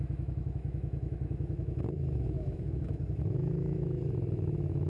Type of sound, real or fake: fake